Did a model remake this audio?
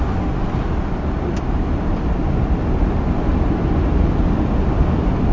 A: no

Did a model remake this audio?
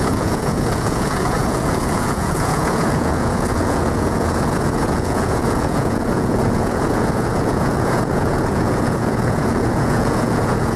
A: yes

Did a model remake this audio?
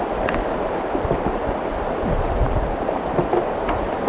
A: no